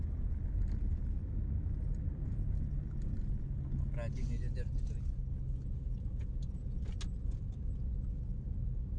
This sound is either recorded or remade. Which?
recorded